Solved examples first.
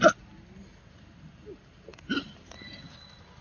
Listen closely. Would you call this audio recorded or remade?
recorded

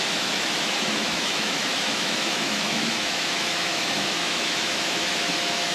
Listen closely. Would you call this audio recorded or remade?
remade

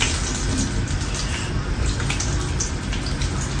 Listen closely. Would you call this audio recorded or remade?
recorded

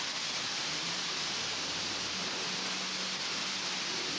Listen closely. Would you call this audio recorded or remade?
recorded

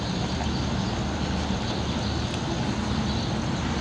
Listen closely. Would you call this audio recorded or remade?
recorded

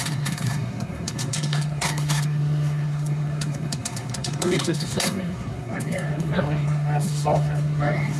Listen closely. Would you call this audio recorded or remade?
remade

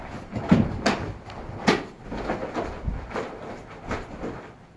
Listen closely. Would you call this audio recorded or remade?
recorded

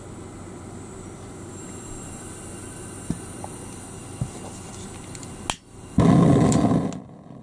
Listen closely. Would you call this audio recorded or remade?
recorded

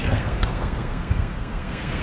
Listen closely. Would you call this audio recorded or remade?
remade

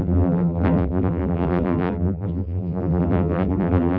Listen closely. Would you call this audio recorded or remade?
remade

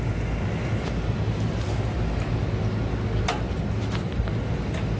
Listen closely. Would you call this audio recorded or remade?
recorded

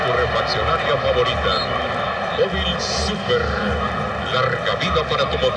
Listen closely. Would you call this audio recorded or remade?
recorded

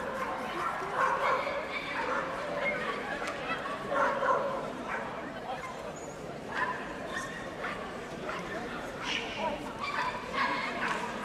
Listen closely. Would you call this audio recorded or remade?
remade